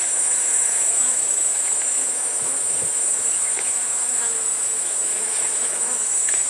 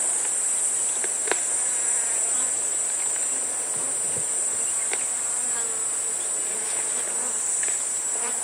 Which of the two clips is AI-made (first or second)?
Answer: first